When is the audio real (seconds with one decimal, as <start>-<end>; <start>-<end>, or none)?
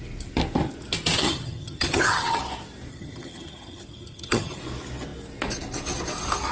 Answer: 0.0-1.2; 2.4-2.9; 4.6-6.5